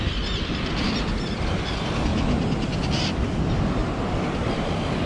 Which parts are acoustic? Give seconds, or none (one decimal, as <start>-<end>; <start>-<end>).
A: 0.0-2.1; 2.9-3.8; 4.6-5.1